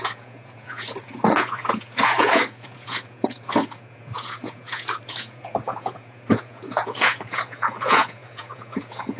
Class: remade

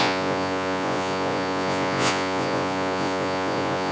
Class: remade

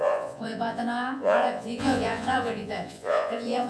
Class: remade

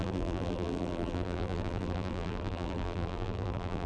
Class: remade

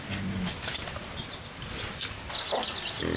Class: recorded